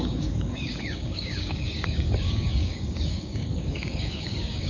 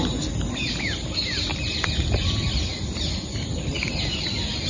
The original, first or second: second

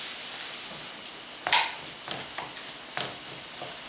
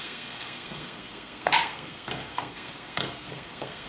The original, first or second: first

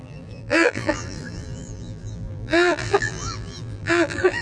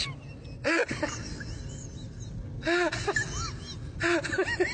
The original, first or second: second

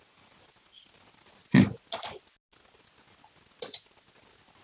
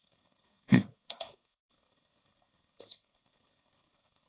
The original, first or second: first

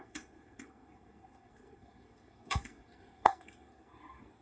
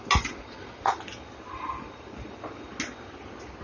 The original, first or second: second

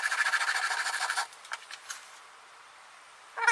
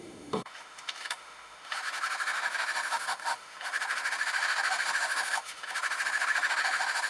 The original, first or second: first